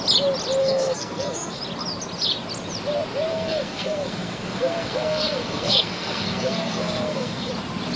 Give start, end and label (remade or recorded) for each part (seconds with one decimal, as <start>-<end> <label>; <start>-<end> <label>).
0.0-0.6 recorded; 0.6-1.6 remade; 1.6-3.3 recorded; 3.3-7.5 remade; 7.5-8.0 recorded